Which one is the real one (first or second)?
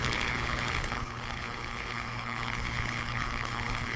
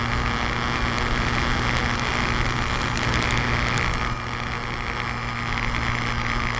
second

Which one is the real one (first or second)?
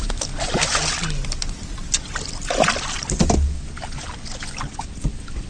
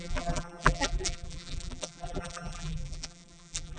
first